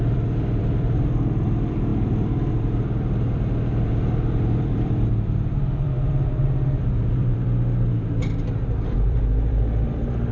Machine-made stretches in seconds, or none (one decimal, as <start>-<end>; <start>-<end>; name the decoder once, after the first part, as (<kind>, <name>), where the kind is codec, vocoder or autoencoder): 0.0-10.3 (vocoder, BigVGAN v2)